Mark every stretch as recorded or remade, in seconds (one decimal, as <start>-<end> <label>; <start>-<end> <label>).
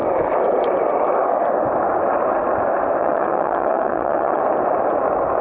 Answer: 0.0-3.0 recorded; 3.0-4.4 remade; 4.4-5.4 recorded